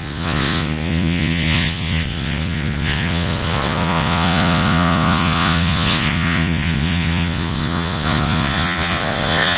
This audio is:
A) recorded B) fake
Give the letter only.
B